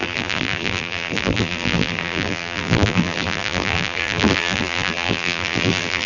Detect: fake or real fake